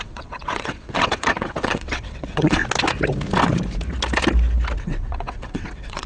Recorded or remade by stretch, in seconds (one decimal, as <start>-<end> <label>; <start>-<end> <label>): 0.0-2.6 remade; 2.6-4.8 recorded; 4.8-6.1 remade